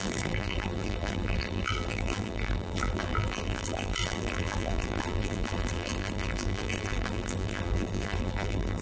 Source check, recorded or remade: remade